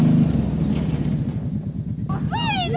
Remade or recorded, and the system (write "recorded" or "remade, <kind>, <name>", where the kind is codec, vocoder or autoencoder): recorded